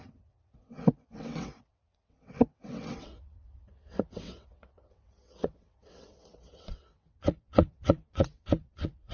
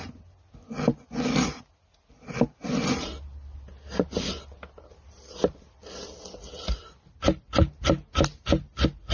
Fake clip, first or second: first